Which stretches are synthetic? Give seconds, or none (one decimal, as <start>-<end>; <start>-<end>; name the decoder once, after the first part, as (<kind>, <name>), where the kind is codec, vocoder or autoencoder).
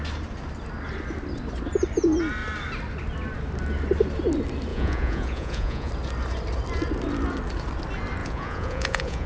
4.7-5.9 (vocoder, Vocos); 8.2-9.3